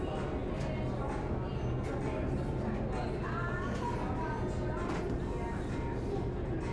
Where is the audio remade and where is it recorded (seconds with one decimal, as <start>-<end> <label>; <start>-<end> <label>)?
0.0-6.7 recorded